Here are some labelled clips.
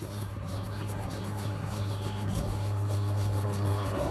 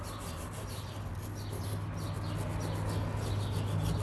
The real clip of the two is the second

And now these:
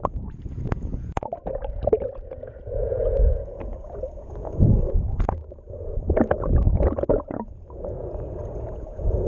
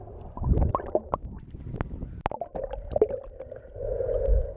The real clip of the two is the second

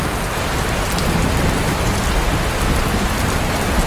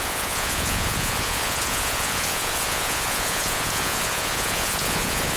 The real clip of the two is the first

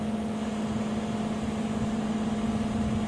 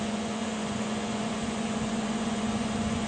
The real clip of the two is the first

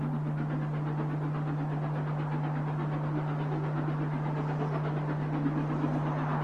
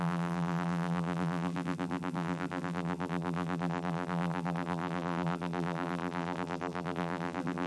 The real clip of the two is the first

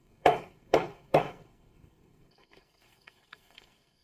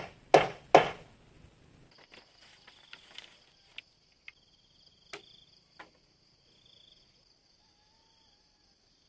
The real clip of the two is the second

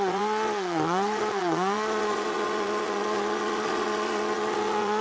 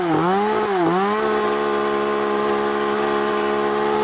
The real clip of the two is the second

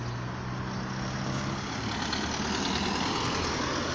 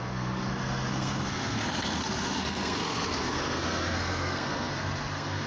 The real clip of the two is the first